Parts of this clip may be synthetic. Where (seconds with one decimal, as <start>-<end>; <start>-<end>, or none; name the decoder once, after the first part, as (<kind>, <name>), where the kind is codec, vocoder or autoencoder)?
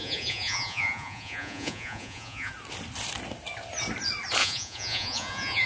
0.0-2.5 (vocoder, Vocos); 4.4-5.7